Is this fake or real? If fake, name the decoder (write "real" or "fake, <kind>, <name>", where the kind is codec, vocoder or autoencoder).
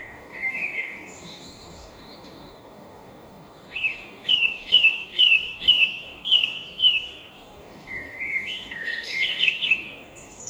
fake, codec, DAC